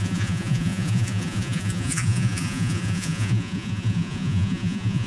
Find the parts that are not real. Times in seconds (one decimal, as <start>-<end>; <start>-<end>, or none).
0.0-5.1